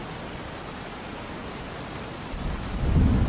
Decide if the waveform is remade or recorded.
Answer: recorded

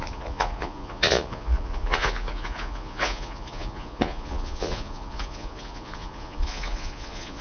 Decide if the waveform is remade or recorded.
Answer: remade